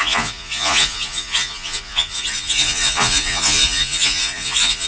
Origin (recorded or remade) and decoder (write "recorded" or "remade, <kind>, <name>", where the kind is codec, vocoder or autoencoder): remade, vocoder, Vocos